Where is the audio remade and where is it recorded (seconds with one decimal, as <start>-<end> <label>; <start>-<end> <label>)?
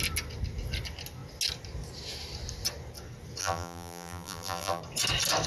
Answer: 0.0-3.4 recorded; 3.4-4.8 remade; 4.8-5.5 recorded